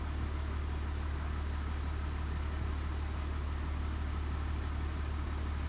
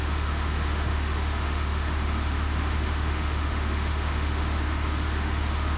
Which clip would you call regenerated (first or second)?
second